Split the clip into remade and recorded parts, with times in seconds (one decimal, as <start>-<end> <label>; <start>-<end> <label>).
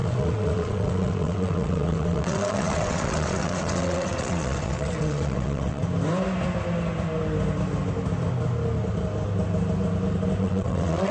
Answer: 0.0-5.8 remade; 5.8-10.4 recorded; 10.4-11.1 remade